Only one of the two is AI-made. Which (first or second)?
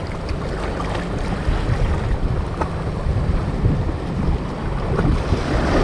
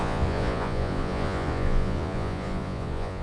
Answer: second